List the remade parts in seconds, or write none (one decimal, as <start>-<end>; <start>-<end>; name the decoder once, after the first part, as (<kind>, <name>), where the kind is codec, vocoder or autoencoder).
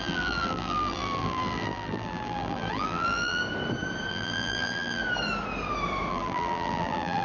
0.0-3.4 (vocoder, BigVGAN v2); 4.1-5.0; 6.1-7.2